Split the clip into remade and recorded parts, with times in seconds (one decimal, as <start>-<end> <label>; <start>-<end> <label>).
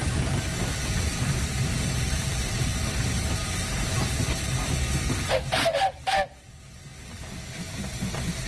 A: 0.0-1.1 recorded; 1.1-4.0 remade; 4.0-8.5 recorded